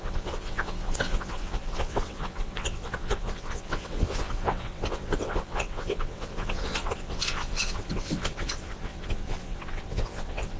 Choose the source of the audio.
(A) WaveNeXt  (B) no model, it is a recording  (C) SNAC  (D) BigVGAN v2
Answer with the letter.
A